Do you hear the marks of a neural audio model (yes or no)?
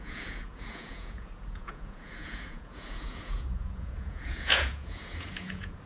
yes